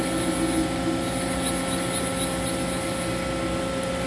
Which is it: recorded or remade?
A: recorded